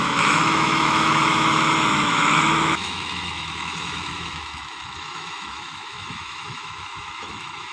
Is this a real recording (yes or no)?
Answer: no